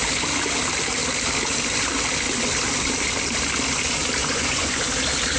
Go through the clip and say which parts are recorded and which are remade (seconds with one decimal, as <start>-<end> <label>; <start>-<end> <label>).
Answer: 0.0-4.2 recorded; 4.2-4.8 remade; 4.8-5.4 recorded